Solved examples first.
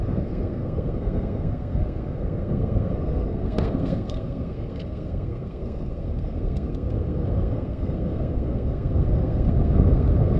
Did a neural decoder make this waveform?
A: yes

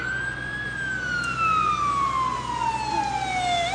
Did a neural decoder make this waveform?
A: no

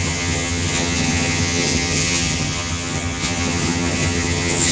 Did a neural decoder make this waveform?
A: yes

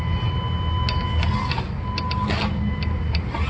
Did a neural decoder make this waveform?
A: no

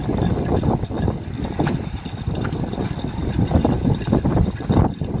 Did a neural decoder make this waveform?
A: no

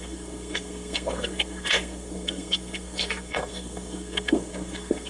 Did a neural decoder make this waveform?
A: yes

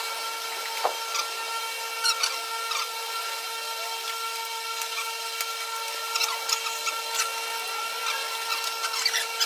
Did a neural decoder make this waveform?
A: no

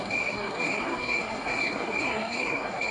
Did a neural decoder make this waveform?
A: yes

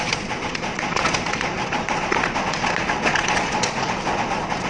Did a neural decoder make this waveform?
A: yes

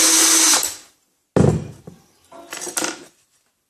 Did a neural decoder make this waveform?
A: no